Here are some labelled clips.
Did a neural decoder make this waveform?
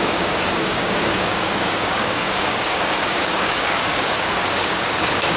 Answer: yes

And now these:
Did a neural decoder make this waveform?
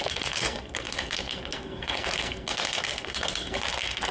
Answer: yes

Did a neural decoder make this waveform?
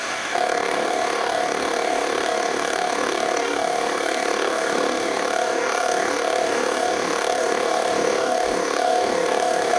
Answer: yes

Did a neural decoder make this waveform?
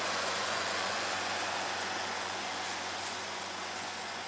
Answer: yes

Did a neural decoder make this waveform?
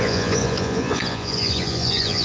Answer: yes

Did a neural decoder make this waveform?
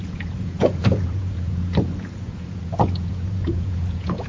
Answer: yes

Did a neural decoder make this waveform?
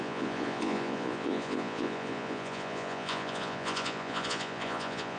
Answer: yes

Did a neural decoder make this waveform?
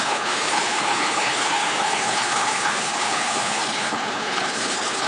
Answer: yes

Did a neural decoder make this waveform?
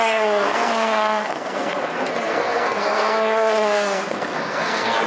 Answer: yes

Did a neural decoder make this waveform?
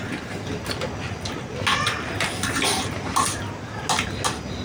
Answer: no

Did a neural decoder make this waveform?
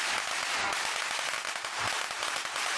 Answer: no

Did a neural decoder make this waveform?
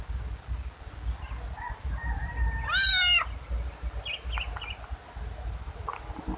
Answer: no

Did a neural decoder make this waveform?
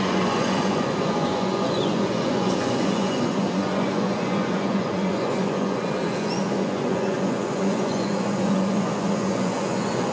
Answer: yes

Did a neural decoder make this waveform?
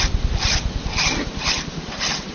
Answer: no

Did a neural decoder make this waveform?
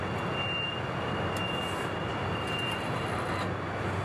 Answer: no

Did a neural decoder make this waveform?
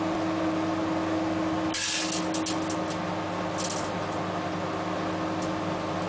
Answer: no